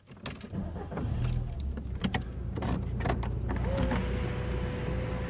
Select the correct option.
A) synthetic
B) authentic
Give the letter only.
B